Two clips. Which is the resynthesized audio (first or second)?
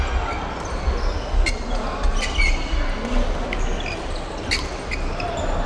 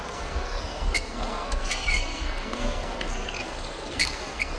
second